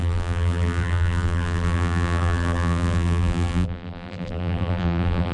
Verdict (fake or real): fake